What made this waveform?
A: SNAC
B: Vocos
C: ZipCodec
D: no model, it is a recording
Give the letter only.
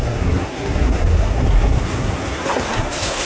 A